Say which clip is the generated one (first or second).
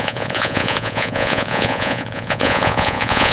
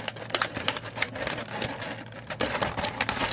first